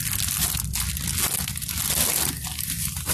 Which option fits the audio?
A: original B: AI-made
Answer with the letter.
A